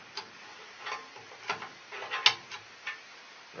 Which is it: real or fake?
real